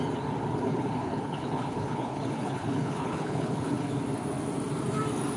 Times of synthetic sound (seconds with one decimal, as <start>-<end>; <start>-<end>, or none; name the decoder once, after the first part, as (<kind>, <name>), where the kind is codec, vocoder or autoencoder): 0.7-3.9 (codec, HILCodec)